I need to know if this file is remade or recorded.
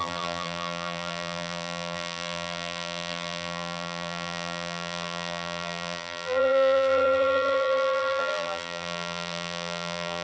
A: remade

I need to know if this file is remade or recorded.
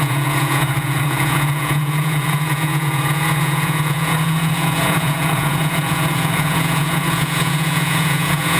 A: remade